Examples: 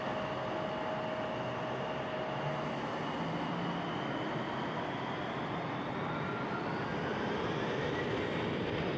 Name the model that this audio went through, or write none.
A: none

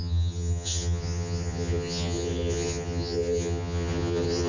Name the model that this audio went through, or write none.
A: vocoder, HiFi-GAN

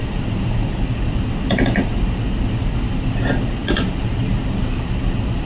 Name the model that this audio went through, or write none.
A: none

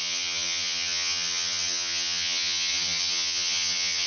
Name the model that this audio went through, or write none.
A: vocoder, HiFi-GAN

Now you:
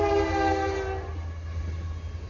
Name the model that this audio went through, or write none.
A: none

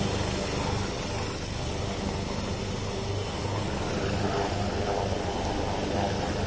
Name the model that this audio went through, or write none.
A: none